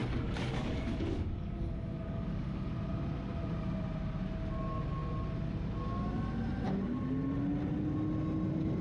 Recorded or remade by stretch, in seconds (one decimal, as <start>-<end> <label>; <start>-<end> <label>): 0.0-2.7 remade; 2.7-8.8 recorded